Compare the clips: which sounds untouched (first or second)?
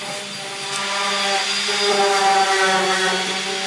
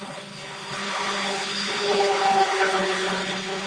first